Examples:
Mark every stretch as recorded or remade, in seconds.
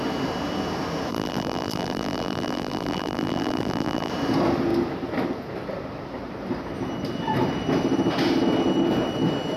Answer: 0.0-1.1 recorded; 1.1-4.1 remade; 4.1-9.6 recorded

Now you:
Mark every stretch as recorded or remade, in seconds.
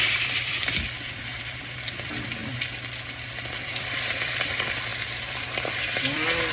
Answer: 0.0-2.4 remade; 2.4-3.5 recorded; 3.5-6.5 remade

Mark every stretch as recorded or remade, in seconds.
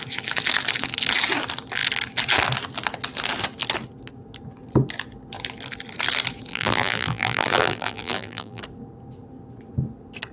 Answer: 0.0-6.5 recorded; 6.5-8.6 remade; 8.6-10.3 recorded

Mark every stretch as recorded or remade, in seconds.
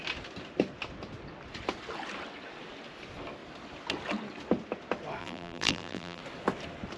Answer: 0.0-5.2 recorded; 5.2-6.2 remade; 6.2-7.0 recorded